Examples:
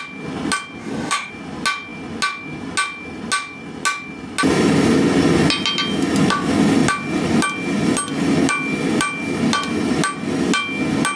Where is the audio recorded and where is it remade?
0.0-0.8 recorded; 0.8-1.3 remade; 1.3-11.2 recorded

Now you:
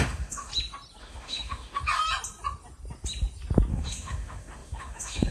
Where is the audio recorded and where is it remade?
0.0-0.5 remade; 0.5-1.0 recorded; 1.0-1.8 remade; 1.8-3.7 recorded; 3.7-5.3 remade

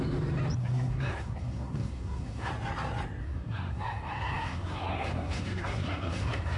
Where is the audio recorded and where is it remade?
0.0-0.6 recorded; 0.6-2.5 remade; 2.5-3.2 recorded; 3.2-6.6 remade